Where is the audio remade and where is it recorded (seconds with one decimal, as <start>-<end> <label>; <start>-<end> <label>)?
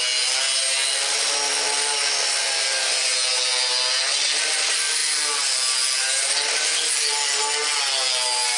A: 0.0-8.6 recorded